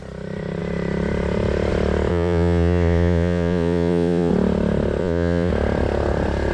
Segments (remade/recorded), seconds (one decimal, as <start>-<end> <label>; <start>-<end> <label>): 0.0-2.1 recorded; 2.1-4.3 remade; 4.3-5.0 recorded; 5.0-5.5 remade; 5.5-6.5 recorded